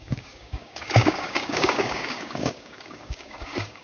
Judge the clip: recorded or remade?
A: remade